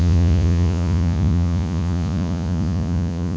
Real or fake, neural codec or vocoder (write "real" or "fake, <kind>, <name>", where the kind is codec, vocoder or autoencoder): fake, vocoder, Vocos